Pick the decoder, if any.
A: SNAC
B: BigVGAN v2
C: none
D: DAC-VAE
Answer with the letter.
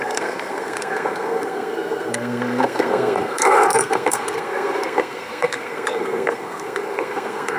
A